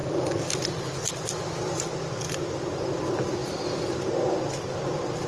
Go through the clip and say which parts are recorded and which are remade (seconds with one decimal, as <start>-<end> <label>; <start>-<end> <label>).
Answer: 0.0-5.3 recorded